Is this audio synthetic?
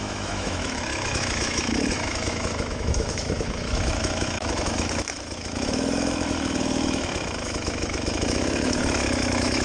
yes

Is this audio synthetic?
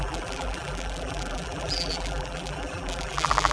yes